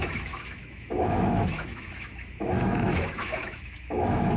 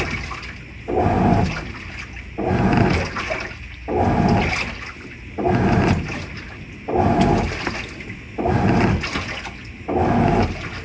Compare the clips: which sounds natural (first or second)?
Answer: second